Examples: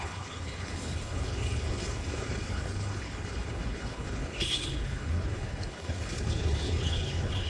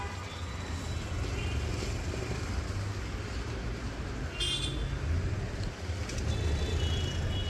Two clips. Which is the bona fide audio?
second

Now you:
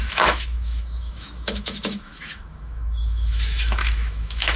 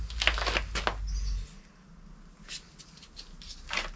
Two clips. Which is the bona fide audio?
second